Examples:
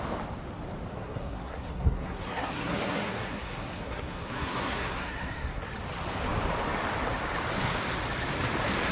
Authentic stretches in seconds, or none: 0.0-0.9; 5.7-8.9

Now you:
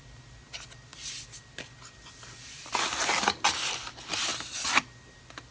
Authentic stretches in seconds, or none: 0.0-5.5

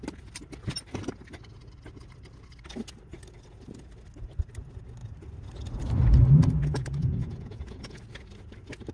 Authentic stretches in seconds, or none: 0.0-6.6; 8.0-8.9